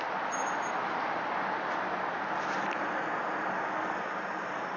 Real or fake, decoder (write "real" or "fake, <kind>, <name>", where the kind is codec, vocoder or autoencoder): real